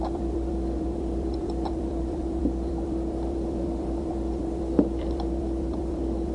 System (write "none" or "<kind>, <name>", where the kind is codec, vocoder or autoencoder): vocoder, BigVGAN v2